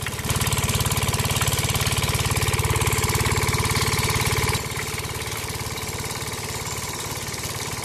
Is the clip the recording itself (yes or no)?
yes